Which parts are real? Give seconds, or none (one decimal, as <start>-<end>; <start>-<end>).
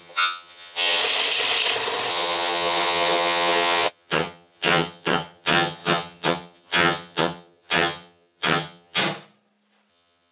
1.0-2.1; 9.0-9.9